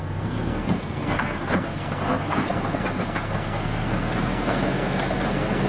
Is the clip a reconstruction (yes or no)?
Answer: yes